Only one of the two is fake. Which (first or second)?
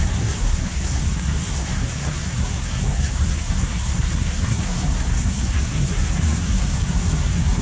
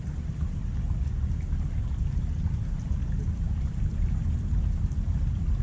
first